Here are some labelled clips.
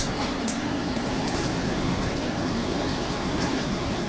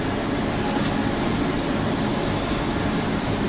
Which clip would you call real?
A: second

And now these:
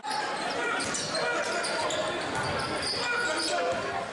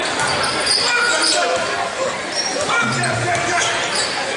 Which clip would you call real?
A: first